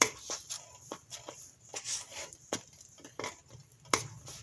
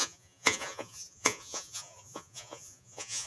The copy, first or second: second